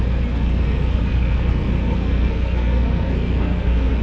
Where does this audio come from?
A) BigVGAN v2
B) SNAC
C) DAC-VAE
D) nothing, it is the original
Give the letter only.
B